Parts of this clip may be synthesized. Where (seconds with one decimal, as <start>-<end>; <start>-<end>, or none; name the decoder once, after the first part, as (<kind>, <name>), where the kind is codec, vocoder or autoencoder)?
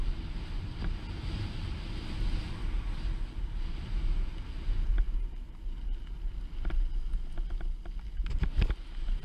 none